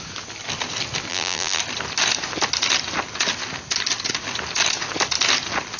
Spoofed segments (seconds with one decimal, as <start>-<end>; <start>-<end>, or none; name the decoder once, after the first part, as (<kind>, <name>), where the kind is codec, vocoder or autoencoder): 1.1-1.6 (vocoder, BigVGAN v2)